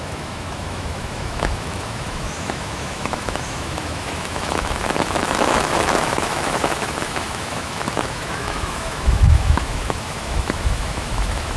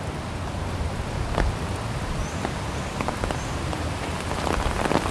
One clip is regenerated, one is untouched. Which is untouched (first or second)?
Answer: second